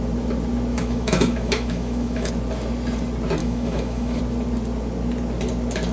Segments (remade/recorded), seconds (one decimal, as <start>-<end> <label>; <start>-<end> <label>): 0.0-0.7 recorded; 0.7-2.3 remade; 2.3-3.4 recorded; 3.4-4.2 remade; 4.2-5.9 recorded